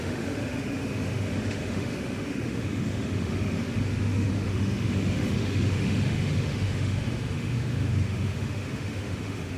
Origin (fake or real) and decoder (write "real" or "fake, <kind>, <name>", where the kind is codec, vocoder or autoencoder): fake, autoencoder, DAC-VAE